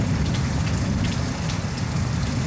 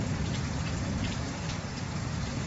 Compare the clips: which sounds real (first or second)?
first